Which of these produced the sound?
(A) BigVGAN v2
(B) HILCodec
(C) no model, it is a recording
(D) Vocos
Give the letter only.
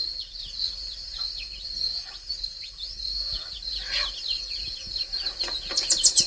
C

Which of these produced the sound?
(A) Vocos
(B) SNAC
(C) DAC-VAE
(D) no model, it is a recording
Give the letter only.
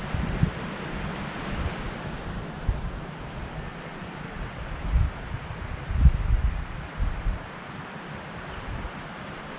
D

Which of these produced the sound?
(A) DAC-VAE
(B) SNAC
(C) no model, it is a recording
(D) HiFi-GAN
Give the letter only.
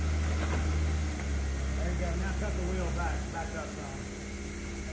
C